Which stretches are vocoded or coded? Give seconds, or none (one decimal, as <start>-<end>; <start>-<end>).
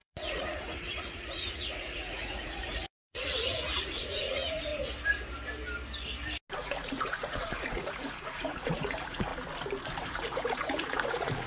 0.0-4.7; 6.6-9.3; 10.1-11.5